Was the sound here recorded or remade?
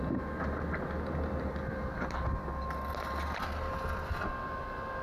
recorded